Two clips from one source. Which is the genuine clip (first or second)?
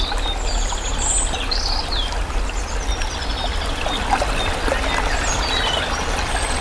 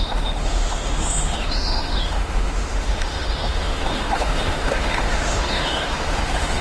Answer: first